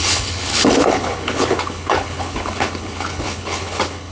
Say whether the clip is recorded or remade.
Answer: remade